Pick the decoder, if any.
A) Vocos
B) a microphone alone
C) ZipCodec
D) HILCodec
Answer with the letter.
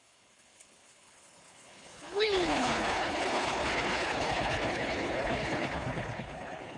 D